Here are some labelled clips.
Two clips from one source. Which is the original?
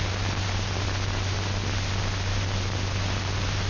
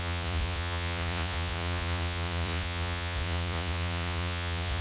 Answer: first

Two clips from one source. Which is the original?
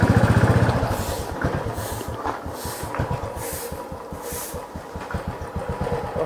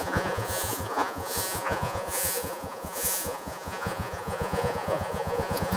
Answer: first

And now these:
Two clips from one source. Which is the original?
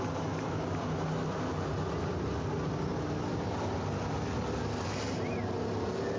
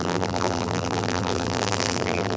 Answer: first